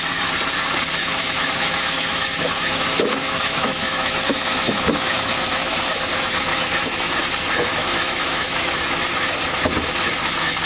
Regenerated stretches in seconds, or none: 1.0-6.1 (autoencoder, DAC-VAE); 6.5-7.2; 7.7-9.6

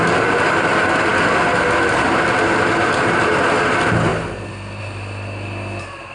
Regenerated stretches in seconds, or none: none

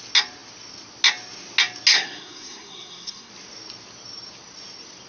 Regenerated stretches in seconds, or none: 1.9-3.3 (codec, SNAC)